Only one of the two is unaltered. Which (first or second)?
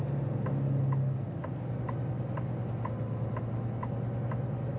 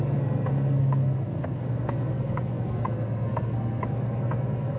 first